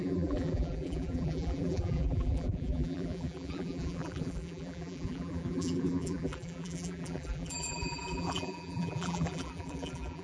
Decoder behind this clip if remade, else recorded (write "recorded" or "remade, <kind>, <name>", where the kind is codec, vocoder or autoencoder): remade, vocoder, BigVGAN v2